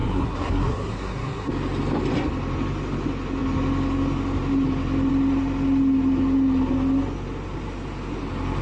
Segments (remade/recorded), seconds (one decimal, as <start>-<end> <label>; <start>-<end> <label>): 0.0-1.5 remade; 1.5-8.6 recorded